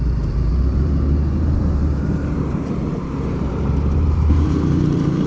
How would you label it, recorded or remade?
remade